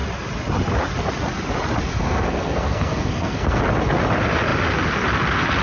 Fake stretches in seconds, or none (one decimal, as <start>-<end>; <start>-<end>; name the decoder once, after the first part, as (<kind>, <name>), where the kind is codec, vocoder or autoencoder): 1.9-3.6 (codec, SNAC)